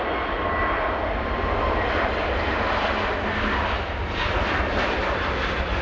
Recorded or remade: recorded